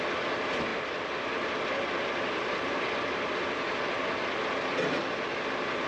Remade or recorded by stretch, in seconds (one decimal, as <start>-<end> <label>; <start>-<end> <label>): 0.0-0.7 recorded; 0.7-3.4 remade; 3.4-5.9 recorded